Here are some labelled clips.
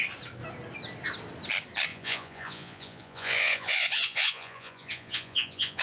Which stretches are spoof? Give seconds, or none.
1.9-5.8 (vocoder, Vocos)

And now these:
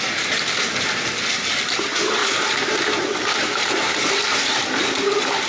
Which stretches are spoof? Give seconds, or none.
none

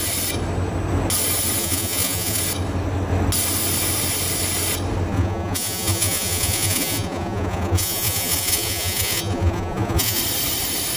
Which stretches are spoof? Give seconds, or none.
1.6-2.4 (vocoder, Vocos); 5.1-10.2